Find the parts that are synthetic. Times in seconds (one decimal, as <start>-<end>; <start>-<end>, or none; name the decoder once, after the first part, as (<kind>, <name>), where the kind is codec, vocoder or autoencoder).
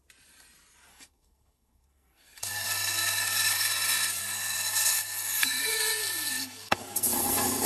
0.9-3.7 (codec, SNAC); 4.2-7.7